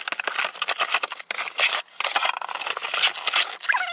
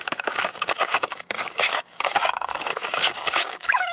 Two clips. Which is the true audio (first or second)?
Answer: first